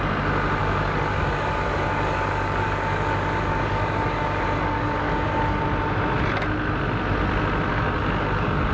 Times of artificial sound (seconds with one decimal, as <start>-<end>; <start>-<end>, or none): 0.6-5.6; 7.7-8.7